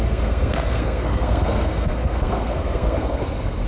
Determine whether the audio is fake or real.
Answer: fake